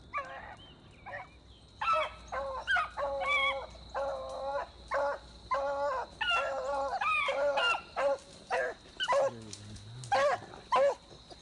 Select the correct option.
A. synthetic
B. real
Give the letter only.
B